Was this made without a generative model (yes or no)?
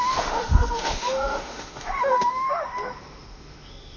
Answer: no